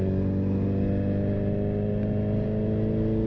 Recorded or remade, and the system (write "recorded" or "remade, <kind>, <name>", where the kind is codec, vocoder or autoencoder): recorded